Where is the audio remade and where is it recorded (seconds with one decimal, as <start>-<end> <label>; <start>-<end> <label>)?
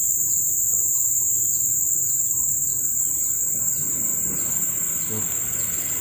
0.0-2.5 recorded; 2.5-3.5 remade; 3.5-4.1 recorded; 4.1-4.7 remade; 4.7-6.0 recorded